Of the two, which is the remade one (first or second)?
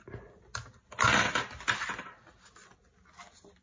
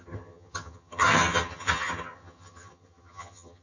second